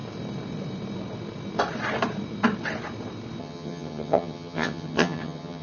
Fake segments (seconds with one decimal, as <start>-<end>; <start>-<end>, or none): 3.4-5.6